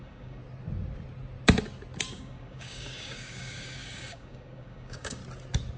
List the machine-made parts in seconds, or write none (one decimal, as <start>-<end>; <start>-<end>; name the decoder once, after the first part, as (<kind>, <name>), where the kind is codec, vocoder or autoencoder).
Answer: 0.0-0.4 (codec, DAC); 2.1-5.2

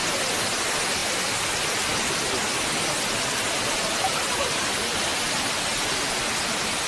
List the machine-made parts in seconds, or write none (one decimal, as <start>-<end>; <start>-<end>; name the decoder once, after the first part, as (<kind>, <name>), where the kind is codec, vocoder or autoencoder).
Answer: none

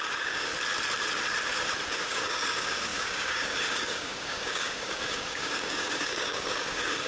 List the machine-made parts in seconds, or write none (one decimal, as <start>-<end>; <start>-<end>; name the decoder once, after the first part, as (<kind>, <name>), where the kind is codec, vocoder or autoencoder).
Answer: 0.0-0.5 (codec, DAC); 1.9-7.1

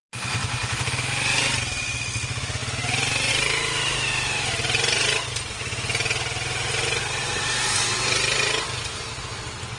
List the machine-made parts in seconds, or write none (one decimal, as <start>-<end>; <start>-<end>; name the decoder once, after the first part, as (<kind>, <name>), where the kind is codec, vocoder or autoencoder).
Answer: none

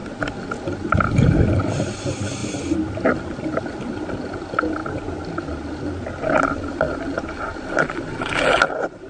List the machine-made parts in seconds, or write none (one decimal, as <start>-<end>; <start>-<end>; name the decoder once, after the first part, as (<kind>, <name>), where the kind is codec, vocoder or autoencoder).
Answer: none